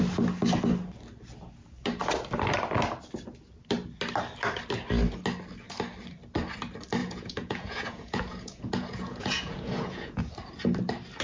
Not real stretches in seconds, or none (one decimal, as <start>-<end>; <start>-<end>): 7.0-10.2